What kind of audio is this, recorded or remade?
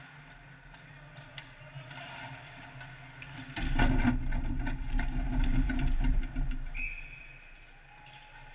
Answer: recorded